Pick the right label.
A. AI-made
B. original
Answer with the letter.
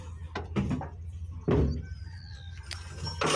B